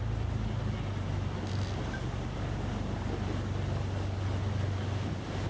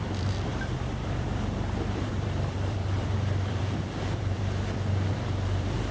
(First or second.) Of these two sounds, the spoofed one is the second